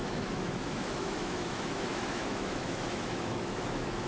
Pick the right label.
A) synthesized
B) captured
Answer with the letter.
A